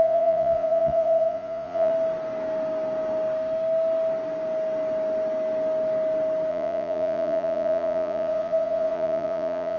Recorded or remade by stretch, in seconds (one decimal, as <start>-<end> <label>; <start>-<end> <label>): 0.0-1.9 remade; 1.9-6.5 recorded; 6.5-9.8 remade